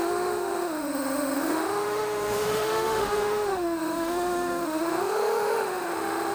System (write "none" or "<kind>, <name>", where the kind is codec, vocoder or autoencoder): autoencoder, DAC-VAE